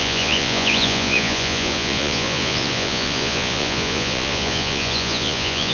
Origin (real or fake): fake